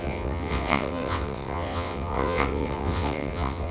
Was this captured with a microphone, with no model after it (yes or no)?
no